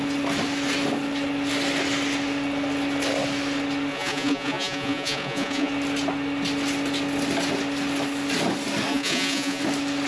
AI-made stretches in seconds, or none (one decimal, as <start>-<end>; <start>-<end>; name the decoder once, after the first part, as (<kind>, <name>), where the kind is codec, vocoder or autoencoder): 3.9-5.7 (vocoder, Vocos); 8.9-9.6